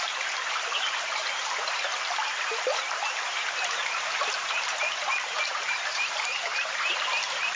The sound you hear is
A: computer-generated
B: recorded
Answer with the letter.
A